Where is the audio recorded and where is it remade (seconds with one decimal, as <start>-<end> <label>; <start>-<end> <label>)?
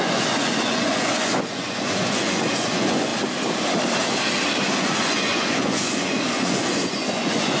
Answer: 0.0-3.1 remade; 3.1-4.8 recorded; 4.8-7.6 remade